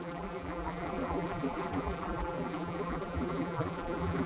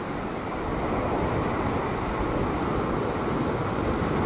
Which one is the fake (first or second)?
first